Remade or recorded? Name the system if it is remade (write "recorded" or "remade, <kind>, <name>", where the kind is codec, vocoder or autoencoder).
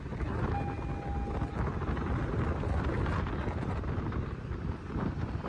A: recorded